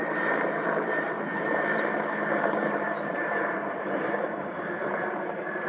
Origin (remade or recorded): remade